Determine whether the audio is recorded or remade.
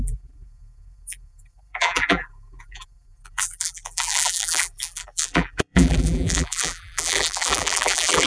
remade